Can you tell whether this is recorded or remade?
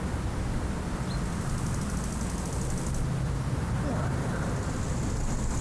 recorded